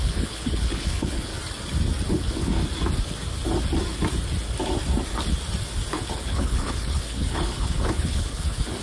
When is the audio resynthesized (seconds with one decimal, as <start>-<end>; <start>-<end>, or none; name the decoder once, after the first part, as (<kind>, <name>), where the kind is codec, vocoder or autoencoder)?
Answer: 0.0-1.3 (codec, HILCodec); 2.1-2.6; 5.9-8.8